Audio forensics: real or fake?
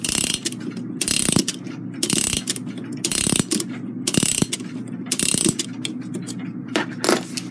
real